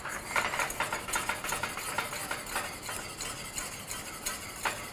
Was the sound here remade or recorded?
recorded